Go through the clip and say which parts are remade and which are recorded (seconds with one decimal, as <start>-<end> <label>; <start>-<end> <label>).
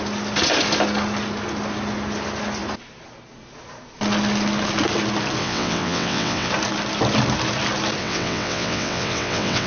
0.0-5.4 recorded; 5.4-6.5 remade; 6.5-8.0 recorded; 8.0-9.7 remade